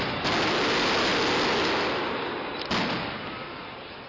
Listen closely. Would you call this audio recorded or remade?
recorded